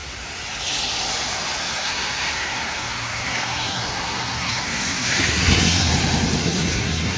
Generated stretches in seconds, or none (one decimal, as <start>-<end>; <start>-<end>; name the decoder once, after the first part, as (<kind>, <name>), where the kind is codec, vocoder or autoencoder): 1.6-5.9 (codec, SNAC); 6.4-7.2